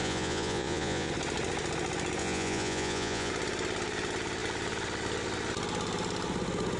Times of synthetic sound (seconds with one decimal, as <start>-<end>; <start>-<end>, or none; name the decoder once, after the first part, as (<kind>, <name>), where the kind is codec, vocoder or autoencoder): 0.0-1.1 (vocoder, Vocos); 2.2-3.3